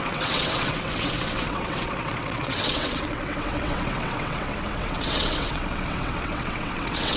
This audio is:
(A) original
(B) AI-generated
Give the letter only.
B